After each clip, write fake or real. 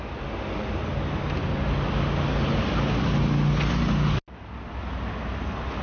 real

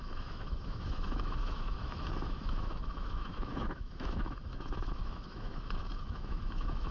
fake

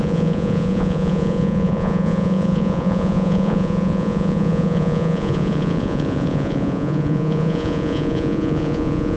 fake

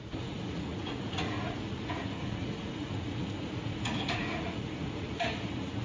fake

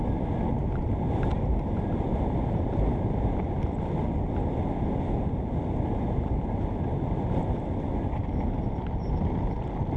real